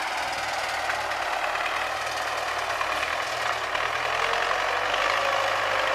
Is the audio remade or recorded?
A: recorded